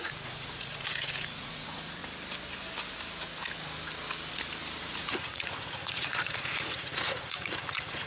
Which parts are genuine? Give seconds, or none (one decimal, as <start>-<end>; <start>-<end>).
2.0-4.8